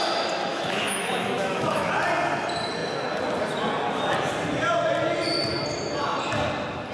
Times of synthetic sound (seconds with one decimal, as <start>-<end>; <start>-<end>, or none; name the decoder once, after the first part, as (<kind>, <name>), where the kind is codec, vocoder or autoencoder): 0.5-1.9 (autoencoder, DAC-VAE)